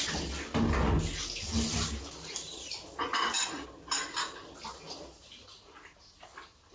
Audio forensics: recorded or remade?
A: recorded